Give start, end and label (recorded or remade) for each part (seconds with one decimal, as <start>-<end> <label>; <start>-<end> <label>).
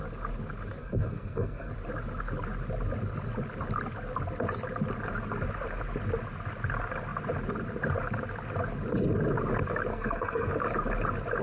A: 0.0-0.8 recorded; 0.8-1.7 remade; 1.7-9.9 recorded; 9.9-10.5 remade; 10.5-11.4 recorded